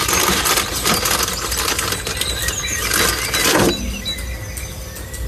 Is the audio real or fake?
real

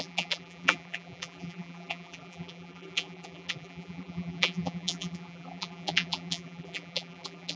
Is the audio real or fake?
fake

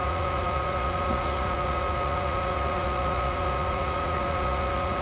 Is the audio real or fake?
fake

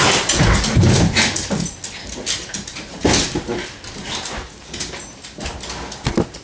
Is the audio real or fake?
real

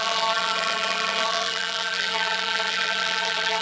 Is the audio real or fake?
fake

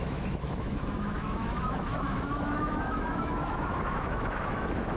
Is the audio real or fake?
fake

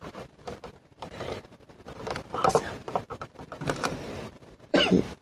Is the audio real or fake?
fake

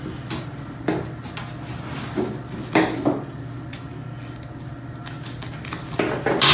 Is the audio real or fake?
real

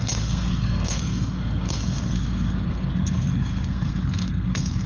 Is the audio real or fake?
fake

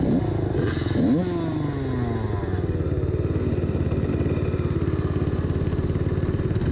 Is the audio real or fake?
real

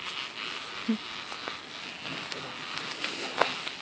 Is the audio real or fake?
real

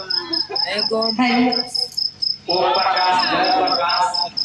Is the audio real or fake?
real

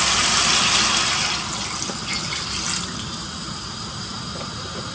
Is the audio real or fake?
real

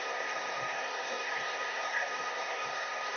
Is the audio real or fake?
fake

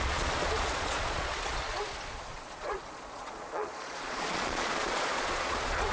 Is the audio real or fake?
fake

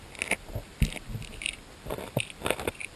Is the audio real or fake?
real